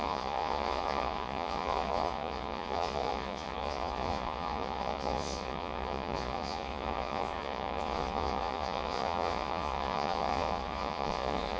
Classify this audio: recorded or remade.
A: remade